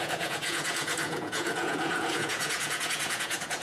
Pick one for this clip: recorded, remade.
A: remade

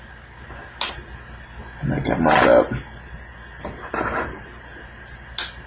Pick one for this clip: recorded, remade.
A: recorded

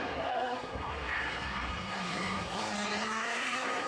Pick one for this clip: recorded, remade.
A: remade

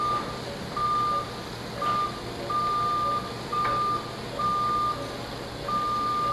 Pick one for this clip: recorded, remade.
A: recorded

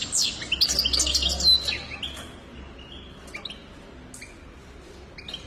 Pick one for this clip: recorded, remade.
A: recorded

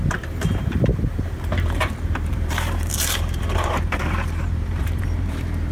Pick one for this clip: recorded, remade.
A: remade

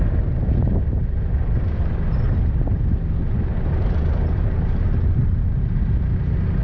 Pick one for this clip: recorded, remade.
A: recorded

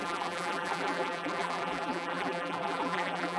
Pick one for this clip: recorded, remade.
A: remade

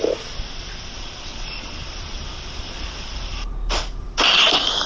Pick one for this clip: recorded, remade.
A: remade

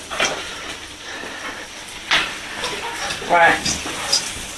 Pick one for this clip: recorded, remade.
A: recorded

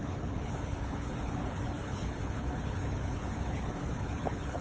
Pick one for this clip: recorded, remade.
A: remade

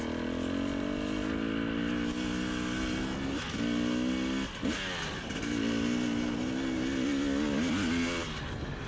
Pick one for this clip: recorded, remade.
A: recorded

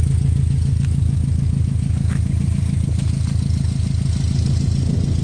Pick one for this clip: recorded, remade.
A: recorded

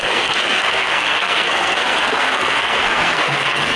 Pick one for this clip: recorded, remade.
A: remade